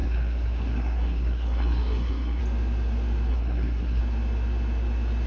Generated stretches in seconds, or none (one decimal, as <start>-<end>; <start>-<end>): 0.0-2.4; 3.3-4.0